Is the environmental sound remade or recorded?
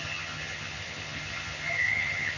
remade